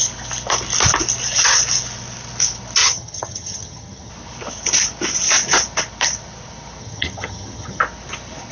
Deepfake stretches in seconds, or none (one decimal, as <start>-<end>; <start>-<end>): 2.8-4.1; 6.8-7.8